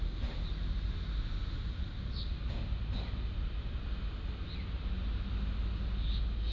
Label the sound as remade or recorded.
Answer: recorded